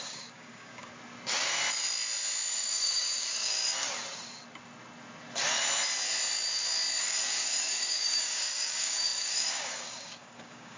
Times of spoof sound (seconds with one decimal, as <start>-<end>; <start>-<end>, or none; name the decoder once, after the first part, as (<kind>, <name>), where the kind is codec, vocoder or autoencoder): 0.0-0.9 (codec, DAC); 2.5-3.6; 7.0-10.8